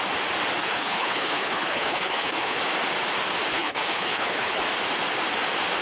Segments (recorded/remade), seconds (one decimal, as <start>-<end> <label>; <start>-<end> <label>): 0.0-0.6 recorded; 0.6-2.6 remade; 2.6-3.5 recorded; 3.5-4.6 remade; 4.6-5.8 recorded